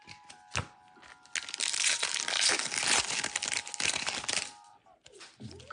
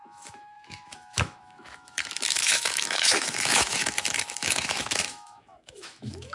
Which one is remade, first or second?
second